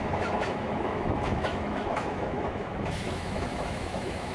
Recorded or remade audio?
remade